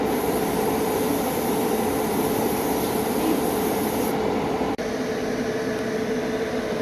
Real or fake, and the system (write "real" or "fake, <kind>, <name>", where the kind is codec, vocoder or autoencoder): fake, vocoder, BigVGAN v2